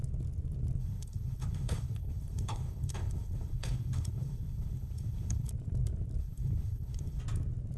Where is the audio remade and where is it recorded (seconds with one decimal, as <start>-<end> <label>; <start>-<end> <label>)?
0.0-0.8 recorded; 0.8-5.5 remade; 5.5-6.2 recorded; 6.2-7.2 remade; 7.2-7.8 recorded